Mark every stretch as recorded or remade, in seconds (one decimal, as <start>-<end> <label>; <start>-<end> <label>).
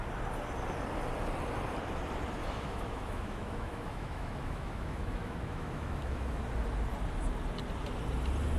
0.0-2.4 recorded; 2.4-6.4 remade; 6.4-8.6 recorded